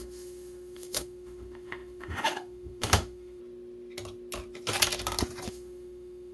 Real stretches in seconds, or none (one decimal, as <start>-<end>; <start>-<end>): 3.4-5.5